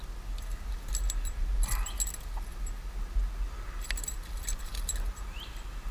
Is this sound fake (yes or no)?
no